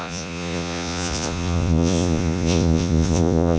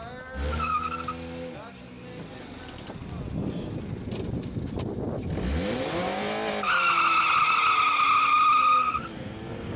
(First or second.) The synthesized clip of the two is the first